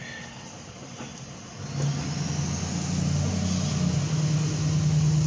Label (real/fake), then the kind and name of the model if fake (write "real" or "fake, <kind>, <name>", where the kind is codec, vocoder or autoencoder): real